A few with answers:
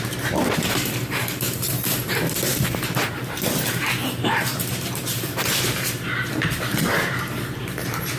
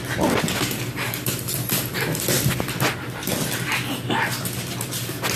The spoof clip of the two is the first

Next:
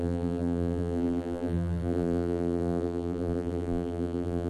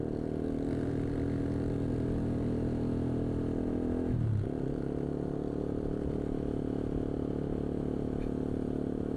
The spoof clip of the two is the first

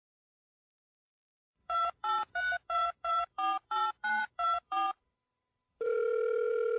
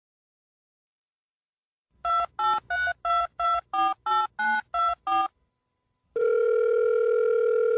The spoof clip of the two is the first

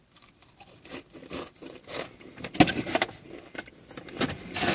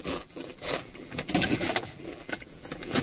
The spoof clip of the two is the second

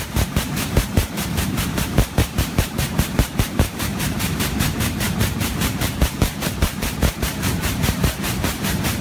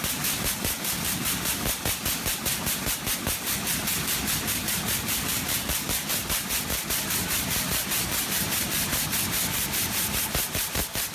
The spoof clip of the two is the first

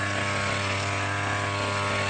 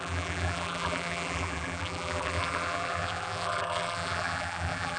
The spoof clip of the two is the second